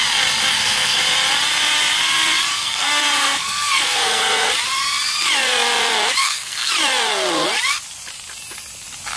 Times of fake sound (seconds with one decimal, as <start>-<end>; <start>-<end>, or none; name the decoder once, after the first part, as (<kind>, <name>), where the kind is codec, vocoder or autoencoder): 0.5-1.0 (codec, SNAC); 2.5-4.5; 6.2-6.7